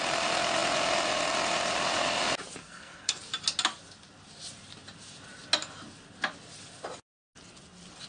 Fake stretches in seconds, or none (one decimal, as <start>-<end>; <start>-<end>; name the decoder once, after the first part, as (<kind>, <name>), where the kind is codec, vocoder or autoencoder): 2.6-3.2 (codec, SNAC)